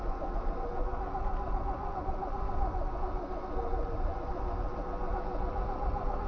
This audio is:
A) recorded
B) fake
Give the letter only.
A